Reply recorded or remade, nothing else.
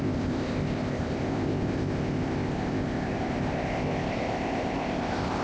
remade